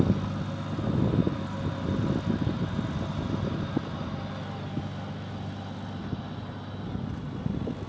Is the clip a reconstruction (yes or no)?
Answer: no